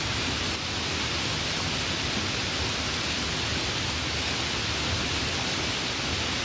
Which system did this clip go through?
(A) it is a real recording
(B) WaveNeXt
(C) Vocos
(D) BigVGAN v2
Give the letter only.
A